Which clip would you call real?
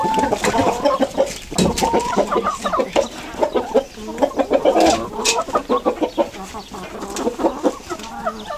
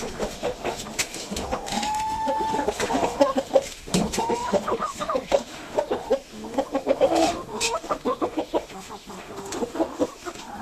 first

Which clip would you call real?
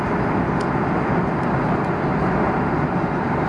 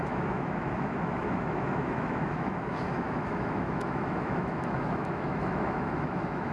first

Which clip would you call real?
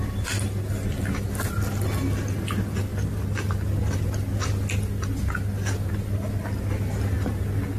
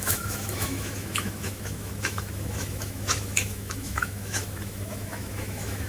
first